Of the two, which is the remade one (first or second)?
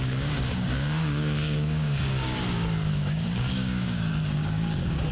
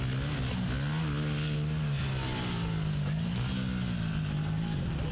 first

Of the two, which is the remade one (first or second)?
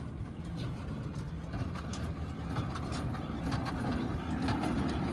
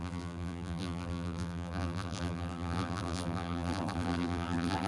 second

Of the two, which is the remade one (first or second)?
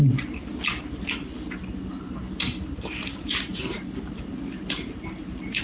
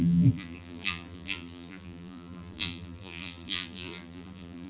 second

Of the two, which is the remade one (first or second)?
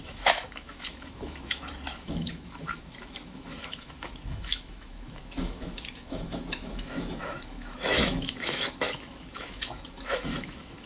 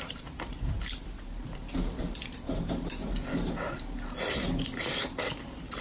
first